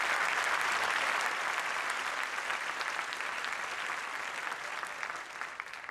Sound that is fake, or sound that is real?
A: real